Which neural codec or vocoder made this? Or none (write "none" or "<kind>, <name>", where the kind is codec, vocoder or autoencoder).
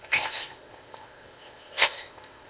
codec, ZipCodec